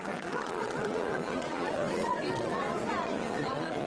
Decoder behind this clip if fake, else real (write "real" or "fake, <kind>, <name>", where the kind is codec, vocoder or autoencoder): fake, vocoder, Vocos